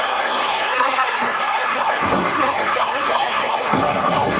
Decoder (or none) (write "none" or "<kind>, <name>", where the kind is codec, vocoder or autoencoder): codec, SNAC